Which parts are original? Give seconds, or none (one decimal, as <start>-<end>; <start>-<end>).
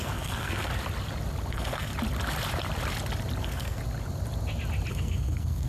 0.7-1.5; 1.9-3.4; 3.8-4.9